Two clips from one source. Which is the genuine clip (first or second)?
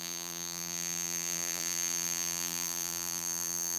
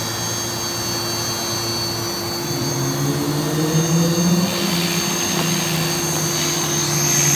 second